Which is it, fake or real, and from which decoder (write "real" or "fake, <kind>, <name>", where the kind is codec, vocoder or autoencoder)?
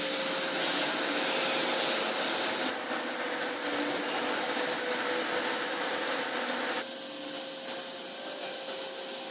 real